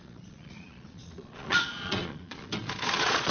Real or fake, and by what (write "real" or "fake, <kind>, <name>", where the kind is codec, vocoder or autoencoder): fake, vocoder, Vocos